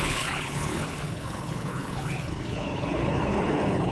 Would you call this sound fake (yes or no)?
yes